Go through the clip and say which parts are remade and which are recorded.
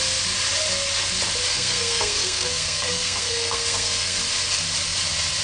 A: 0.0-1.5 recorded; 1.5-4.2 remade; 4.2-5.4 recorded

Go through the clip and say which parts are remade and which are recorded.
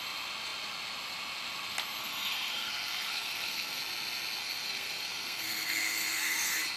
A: 0.0-2.0 recorded; 2.0-3.8 remade; 3.8-4.4 recorded; 4.4-6.8 remade